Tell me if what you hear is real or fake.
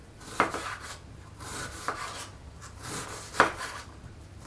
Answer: real